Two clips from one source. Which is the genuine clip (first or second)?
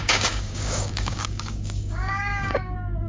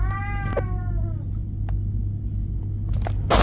second